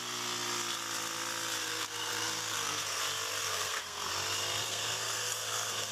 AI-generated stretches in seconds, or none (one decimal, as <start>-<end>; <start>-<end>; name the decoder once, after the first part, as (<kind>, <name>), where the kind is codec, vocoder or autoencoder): 1.6-3.0 (codec, SNAC); 3.4-4.1; 4.6-5.9